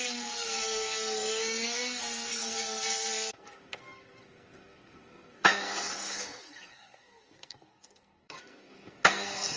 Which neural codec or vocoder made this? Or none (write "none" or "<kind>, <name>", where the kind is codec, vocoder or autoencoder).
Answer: codec, SNAC